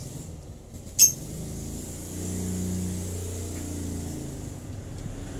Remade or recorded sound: recorded